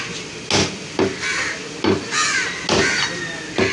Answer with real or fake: real